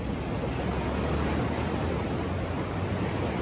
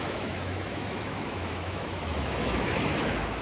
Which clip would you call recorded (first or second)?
first